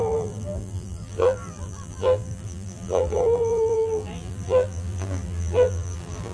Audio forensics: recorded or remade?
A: remade